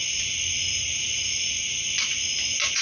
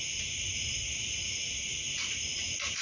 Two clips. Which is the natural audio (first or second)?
first